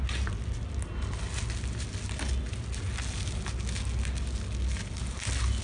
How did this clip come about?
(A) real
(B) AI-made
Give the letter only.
A